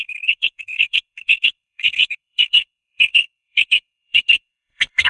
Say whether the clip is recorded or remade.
remade